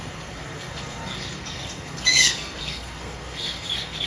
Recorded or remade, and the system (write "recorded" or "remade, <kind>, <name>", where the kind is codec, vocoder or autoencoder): remade, codec, SNAC